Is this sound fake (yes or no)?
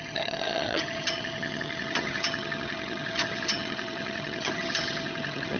yes